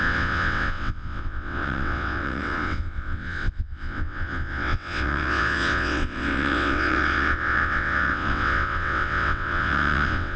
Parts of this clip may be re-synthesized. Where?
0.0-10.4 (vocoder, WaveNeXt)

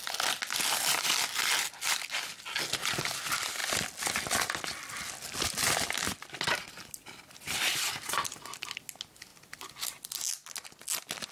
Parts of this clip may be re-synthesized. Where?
none